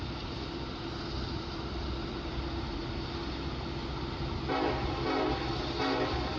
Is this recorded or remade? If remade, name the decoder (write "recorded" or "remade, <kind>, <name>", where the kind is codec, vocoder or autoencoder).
recorded